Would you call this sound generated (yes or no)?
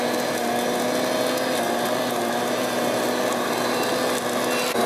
no